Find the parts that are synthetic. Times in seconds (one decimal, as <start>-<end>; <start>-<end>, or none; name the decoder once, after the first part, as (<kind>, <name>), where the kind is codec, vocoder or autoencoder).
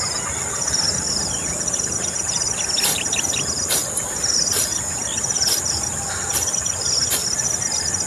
none